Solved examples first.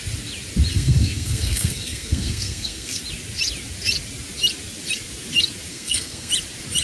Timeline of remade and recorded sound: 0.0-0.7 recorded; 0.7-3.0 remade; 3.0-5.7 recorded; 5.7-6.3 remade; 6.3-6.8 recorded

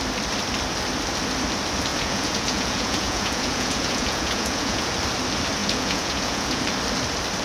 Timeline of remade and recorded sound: 0.0-1.9 recorded; 1.9-4.9 remade; 4.9-5.6 recorded; 5.6-6.6 remade; 6.6-7.4 recorded

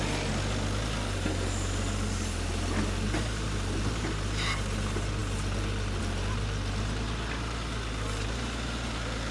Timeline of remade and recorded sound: 0.0-9.3 recorded

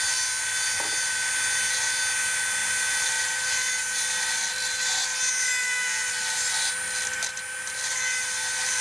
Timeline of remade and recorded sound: 0.0-8.8 recorded